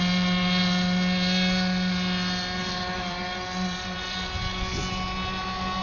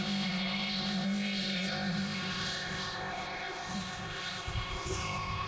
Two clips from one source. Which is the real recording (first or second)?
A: first